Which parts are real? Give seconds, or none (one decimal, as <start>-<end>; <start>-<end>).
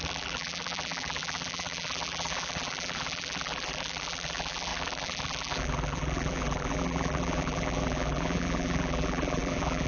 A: none